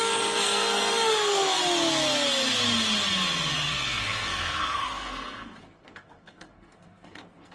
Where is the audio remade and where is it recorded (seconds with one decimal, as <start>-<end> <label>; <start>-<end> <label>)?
0.0-1.6 remade; 1.6-3.7 recorded; 3.7-7.5 remade